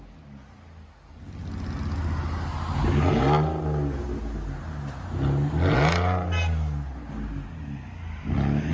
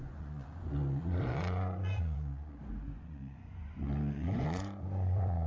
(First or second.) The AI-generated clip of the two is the second